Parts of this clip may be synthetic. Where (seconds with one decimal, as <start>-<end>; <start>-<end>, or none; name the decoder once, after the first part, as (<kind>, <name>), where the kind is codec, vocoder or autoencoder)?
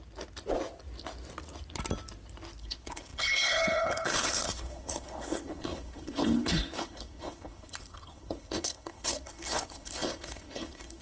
2.6-11.0 (codec, HILCodec)